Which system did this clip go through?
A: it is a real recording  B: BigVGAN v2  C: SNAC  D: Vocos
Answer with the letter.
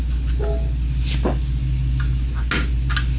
A